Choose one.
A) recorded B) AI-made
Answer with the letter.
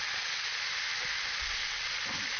A